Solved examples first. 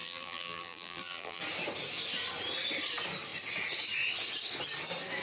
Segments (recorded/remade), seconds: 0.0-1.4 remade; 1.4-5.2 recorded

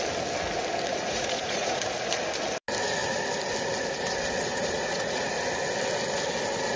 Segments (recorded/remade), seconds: 0.0-0.9 recorded; 0.9-1.8 remade; 1.8-4.5 recorded; 4.5-5.4 remade; 5.4-6.8 recorded

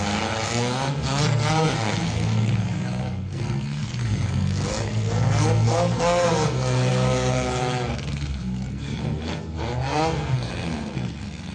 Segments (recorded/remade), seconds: 0.0-11.5 remade